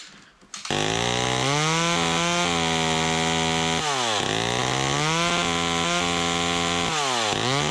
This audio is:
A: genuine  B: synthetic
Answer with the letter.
A